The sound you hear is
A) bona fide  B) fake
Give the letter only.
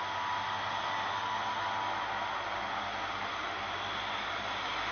A